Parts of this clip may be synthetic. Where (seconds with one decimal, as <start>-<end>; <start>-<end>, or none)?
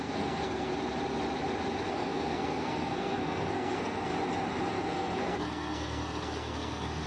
0.0-0.7; 1.9-4.1; 4.7-7.1